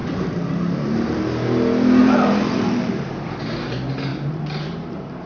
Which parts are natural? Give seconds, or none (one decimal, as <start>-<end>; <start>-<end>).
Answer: 1.3-2.0; 2.9-4.1